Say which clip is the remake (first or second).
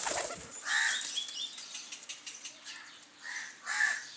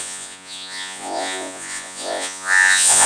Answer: second